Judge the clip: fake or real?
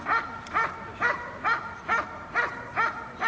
real